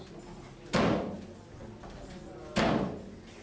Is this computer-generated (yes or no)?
no